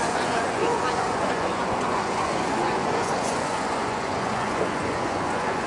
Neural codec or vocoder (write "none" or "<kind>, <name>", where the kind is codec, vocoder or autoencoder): vocoder, Vocos